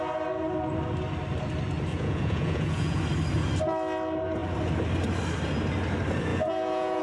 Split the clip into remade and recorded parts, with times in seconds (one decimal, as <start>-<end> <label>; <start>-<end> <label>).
0.0-1.9 recorded; 1.9-3.0 remade; 3.0-6.3 recorded; 6.3-7.0 remade